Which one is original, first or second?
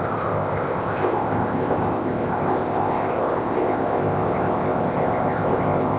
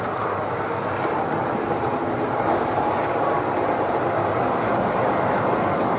second